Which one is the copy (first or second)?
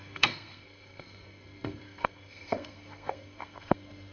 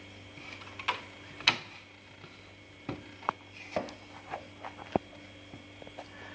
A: first